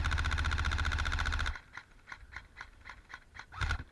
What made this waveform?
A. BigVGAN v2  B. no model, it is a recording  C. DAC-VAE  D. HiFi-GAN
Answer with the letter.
B